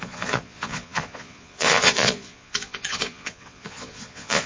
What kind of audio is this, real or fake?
fake